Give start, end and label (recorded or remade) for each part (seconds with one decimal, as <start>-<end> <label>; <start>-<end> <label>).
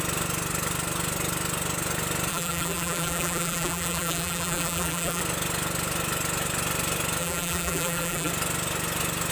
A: 0.0-2.3 recorded; 2.3-5.2 remade; 5.2-7.2 recorded; 7.2-8.3 remade; 8.3-9.3 recorded